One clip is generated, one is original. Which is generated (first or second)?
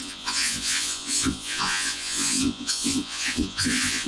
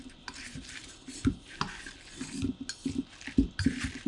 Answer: first